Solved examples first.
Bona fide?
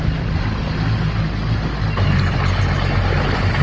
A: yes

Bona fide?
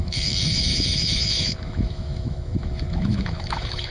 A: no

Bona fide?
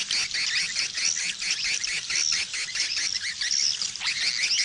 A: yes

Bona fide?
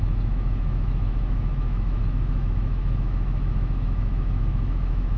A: no